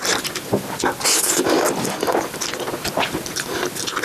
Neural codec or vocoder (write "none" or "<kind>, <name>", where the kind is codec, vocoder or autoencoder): none